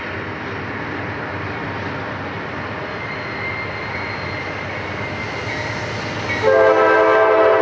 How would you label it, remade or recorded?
recorded